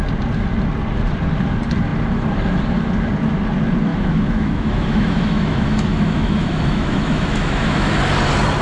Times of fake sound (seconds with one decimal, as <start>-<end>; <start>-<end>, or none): 3.9-8.0